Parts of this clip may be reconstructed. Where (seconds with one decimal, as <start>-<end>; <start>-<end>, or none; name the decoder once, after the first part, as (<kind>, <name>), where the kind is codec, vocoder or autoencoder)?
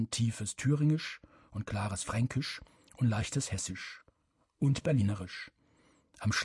4.0-5.0 (codec, HILCodec)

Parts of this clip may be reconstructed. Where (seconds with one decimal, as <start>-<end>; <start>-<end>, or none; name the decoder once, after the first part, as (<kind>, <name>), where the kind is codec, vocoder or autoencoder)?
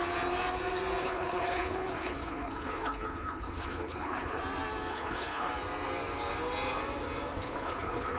1.0-4.4 (codec, HILCodec); 4.9-5.5; 7.4-8.2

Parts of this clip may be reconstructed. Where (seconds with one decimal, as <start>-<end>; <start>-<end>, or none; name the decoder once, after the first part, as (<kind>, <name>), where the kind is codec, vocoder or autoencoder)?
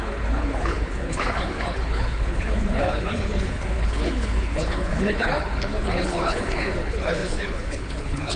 0.0-8.4 (codec, HILCodec)